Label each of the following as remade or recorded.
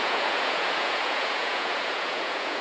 remade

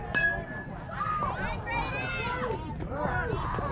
recorded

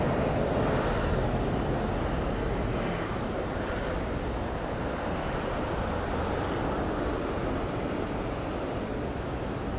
recorded